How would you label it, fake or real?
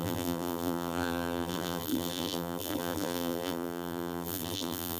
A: fake